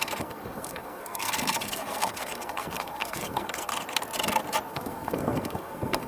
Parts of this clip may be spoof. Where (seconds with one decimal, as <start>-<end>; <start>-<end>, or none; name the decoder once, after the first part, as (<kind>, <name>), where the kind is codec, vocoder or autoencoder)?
0.0-3.7 (codec, SNAC); 4.7-6.1